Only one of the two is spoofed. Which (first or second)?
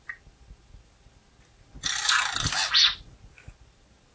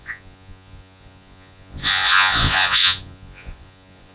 second